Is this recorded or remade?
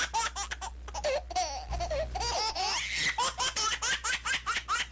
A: recorded